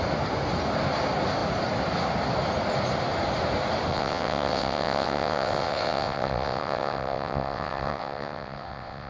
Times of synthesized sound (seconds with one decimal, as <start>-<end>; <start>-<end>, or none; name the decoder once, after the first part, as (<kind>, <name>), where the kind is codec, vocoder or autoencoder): 3.9-9.1 (vocoder, WaveNeXt)

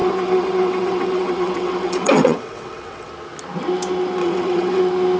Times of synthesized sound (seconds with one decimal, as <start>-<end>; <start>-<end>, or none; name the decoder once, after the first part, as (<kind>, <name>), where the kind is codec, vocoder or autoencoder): 0.0-3.1 (vocoder, WaveNeXt); 4.2-4.8